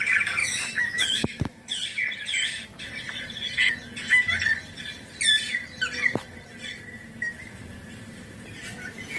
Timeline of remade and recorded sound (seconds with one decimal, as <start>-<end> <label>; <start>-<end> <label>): 0.0-0.4 recorded; 0.4-1.8 remade; 1.8-9.2 recorded